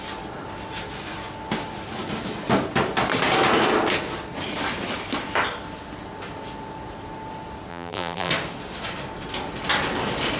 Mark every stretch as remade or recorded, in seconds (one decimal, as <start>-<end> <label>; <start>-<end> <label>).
0.0-7.7 recorded; 7.7-8.3 remade; 8.3-10.4 recorded